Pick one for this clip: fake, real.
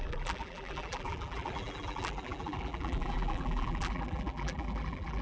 fake